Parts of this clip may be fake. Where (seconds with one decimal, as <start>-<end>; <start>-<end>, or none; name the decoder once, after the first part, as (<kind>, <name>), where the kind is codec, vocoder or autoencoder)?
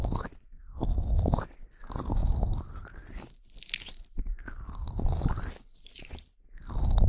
none